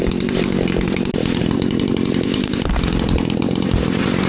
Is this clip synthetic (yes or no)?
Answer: yes